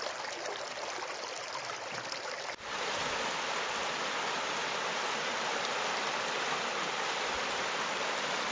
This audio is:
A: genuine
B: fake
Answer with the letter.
A